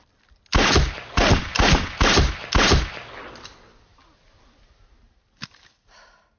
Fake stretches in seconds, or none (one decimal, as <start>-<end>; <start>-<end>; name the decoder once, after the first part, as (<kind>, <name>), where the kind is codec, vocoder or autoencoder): none